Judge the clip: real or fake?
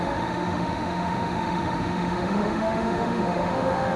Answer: fake